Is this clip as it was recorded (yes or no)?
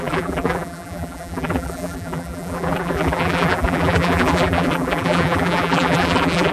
no